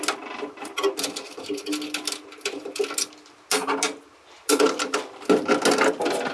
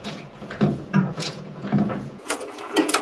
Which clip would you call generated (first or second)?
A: second